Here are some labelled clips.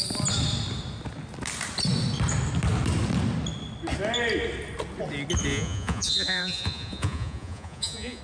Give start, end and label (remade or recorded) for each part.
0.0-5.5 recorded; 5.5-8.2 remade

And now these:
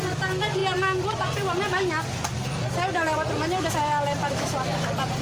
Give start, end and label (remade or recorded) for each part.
0.0-5.2 recorded